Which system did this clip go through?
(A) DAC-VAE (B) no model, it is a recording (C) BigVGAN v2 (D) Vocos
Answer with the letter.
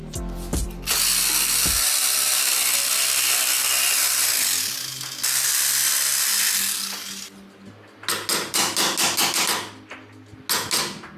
B